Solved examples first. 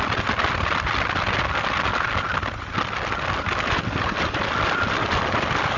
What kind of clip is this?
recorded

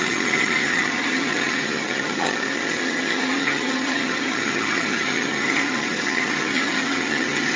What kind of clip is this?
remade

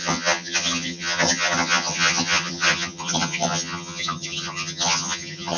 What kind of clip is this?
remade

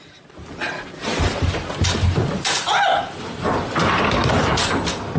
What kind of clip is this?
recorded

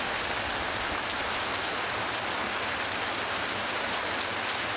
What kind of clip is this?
recorded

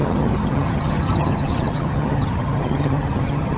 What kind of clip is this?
remade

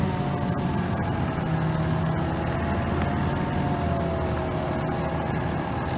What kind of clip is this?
recorded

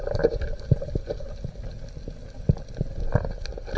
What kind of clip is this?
recorded